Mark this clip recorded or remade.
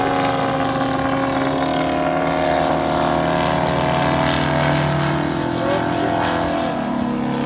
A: recorded